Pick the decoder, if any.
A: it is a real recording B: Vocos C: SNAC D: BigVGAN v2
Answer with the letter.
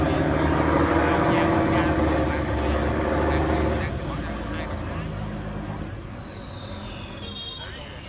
A